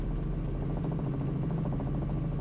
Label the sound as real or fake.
real